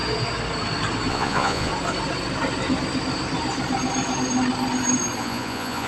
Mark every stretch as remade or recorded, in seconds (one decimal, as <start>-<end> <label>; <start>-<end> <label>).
0.0-1.1 recorded; 1.1-1.7 remade; 1.7-5.2 recorded; 5.2-5.9 remade